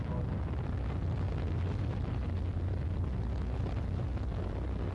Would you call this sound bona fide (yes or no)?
yes